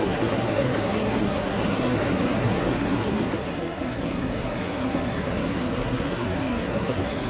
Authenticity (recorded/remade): remade